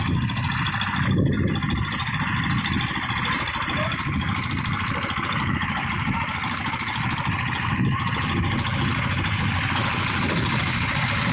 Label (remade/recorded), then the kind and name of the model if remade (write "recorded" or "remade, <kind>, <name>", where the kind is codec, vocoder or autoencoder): remade, vocoder, BigVGAN v2